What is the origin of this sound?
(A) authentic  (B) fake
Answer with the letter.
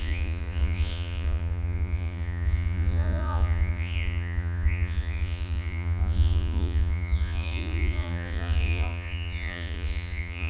B